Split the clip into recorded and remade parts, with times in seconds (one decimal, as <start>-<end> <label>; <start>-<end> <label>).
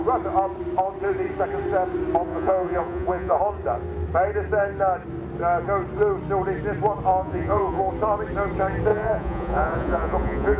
0.0-2.3 recorded; 2.3-3.4 remade; 3.4-7.1 recorded; 7.1-7.8 remade; 7.8-8.9 recorded; 8.9-10.6 remade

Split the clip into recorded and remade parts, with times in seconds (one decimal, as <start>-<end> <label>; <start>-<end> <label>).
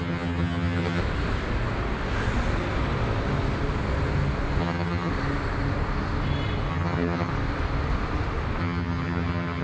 0.0-1.0 remade; 1.0-4.6 recorded; 4.6-5.1 remade; 5.1-6.7 recorded; 6.7-7.3 remade; 7.3-8.6 recorded; 8.6-9.6 remade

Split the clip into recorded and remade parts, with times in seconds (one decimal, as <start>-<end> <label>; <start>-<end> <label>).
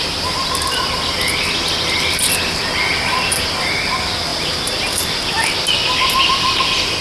0.0-7.0 recorded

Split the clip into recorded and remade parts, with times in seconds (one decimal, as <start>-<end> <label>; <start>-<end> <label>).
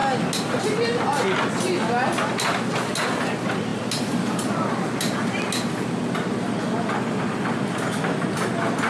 0.0-8.9 recorded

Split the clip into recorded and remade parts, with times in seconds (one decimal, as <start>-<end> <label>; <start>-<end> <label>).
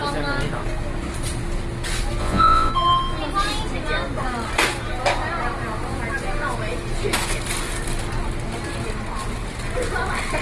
0.0-2.2 recorded; 2.2-2.7 remade; 2.7-10.4 recorded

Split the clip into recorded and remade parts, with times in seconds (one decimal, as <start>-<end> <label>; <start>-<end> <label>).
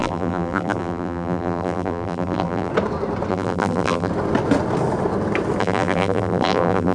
0.0-2.7 remade; 2.7-3.3 recorded; 3.3-4.1 remade; 4.1-5.6 recorded; 5.6-6.9 remade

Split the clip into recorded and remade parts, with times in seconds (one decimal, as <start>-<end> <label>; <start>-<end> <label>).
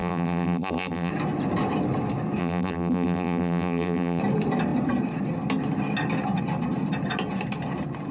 0.0-1.1 remade; 1.1-2.4 recorded; 2.4-4.2 remade; 4.2-8.1 recorded